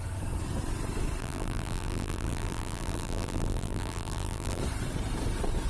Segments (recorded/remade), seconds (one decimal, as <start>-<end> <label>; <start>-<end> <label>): 0.0-1.2 recorded; 1.2-4.6 remade; 4.6-5.7 recorded